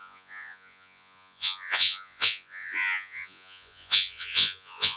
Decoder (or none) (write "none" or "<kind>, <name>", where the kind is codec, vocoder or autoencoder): vocoder, Vocos